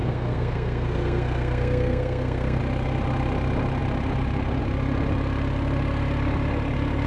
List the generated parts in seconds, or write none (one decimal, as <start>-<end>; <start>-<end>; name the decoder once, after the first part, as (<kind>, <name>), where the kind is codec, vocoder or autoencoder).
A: 0.0-2.6 (codec, SNAC)